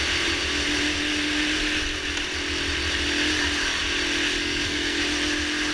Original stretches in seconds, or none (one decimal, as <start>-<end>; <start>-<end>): 0.0-4.4; 5.0-5.7

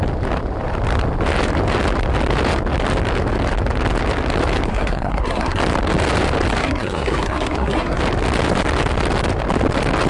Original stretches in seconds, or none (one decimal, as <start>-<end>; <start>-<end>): 0.0-4.7; 5.6-6.6; 8.0-10.1

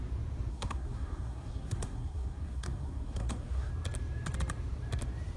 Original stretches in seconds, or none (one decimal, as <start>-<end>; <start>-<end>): 0.0-0.5; 3.7-5.4

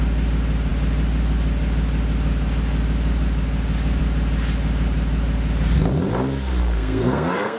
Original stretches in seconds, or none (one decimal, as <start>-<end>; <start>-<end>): 0.0-6.6